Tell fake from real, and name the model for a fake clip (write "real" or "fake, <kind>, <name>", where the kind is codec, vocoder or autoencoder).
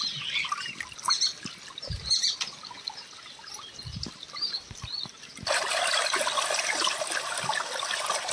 real